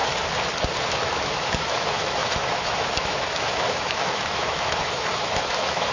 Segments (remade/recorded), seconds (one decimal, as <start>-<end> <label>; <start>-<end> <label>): 0.0-0.8 recorded; 0.8-5.9 remade